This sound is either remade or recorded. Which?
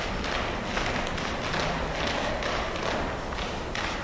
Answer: recorded